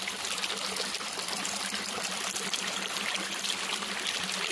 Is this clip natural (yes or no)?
yes